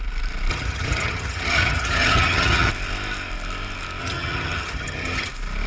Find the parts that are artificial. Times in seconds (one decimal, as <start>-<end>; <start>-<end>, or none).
0.5-2.7; 4.0-5.3